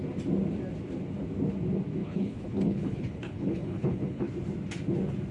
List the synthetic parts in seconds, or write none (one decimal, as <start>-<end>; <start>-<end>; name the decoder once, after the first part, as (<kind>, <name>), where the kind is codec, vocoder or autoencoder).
2.0-4.3 (codec, HILCodec)